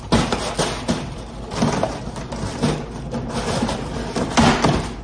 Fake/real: real